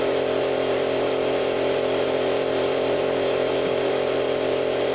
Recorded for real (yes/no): no